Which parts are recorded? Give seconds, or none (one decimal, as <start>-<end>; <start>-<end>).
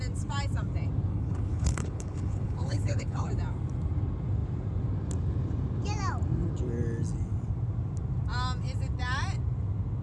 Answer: 0.0-1.1; 3.3-10.0